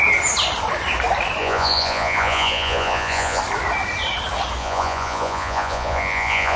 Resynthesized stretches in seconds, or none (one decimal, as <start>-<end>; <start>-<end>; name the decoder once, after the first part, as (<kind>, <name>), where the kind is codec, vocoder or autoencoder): 1.4-3.4 (vocoder, Vocos); 4.6-6.6